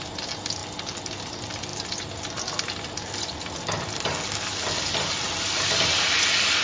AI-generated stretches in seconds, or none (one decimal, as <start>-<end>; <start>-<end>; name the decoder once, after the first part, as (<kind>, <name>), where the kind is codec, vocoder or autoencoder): none